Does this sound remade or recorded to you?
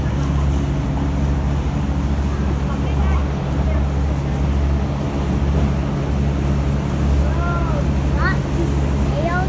recorded